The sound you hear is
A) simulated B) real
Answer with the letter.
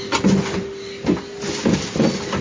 B